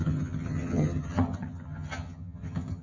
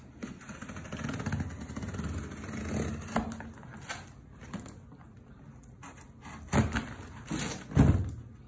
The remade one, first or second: first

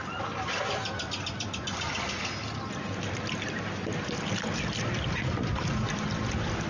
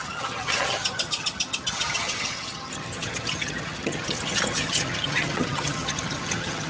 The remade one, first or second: second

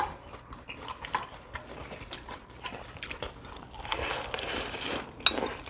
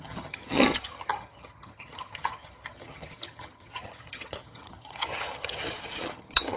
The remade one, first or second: second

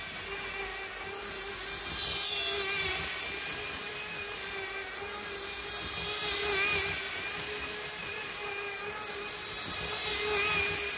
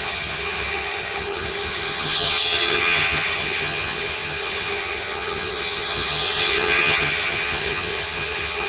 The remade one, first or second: second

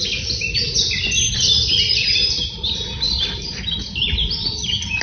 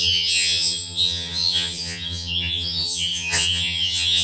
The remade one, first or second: second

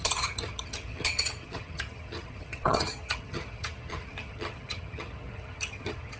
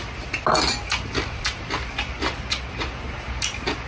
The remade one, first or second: first